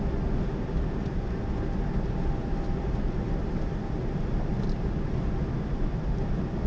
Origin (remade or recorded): recorded